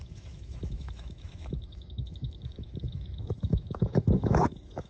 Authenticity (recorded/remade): remade